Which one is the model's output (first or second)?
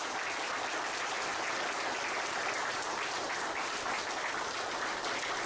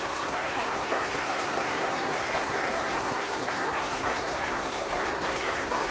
second